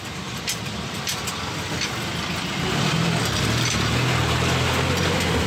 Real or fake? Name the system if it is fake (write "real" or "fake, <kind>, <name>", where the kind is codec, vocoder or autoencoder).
real